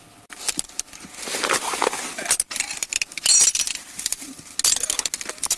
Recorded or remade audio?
recorded